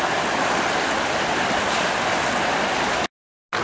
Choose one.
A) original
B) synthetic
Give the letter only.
A